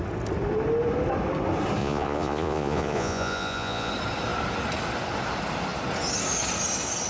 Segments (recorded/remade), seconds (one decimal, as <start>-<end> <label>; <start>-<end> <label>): 0.0-1.8 recorded; 1.8-3.9 remade; 3.9-7.1 recorded